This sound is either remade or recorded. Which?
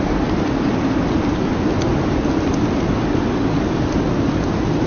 recorded